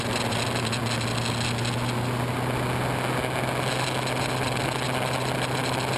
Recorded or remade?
recorded